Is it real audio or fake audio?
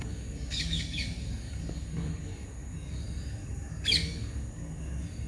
fake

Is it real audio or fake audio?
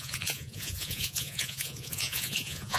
fake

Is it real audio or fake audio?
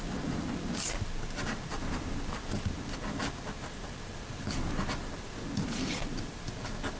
real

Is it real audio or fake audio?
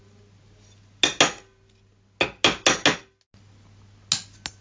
real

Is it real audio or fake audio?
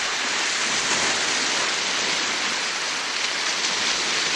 real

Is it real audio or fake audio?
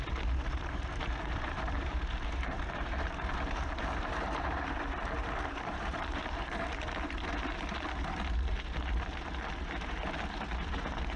fake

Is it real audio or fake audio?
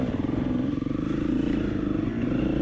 real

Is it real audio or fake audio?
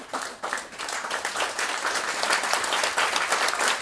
real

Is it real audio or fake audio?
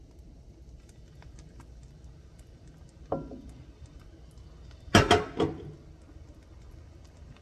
real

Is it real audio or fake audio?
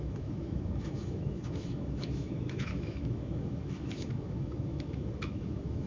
fake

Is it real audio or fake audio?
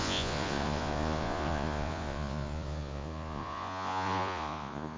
fake